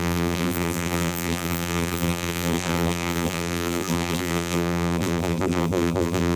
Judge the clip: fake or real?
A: fake